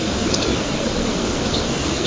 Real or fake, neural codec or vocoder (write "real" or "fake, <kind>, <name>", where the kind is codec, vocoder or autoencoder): fake, codec, SNAC